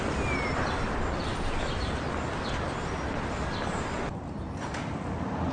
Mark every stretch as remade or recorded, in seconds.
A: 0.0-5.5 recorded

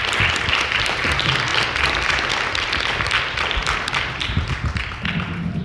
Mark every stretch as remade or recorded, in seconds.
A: 0.0-5.6 recorded

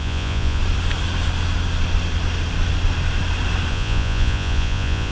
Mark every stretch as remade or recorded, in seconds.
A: 0.0-0.6 remade; 0.6-3.7 recorded; 3.7-5.1 remade